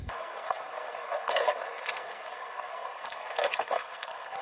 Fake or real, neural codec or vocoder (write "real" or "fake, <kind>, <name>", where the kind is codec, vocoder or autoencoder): fake, codec, SNAC